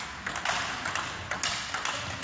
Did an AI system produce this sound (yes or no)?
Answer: no